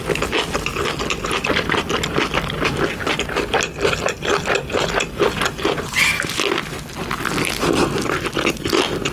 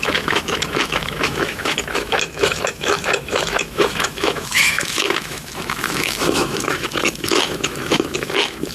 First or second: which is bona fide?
first